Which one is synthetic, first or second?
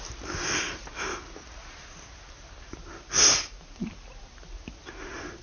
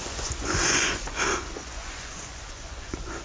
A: second